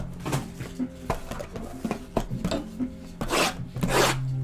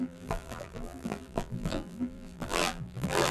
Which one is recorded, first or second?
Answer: first